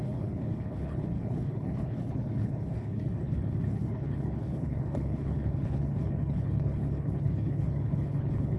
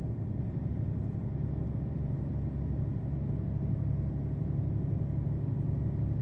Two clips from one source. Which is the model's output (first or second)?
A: first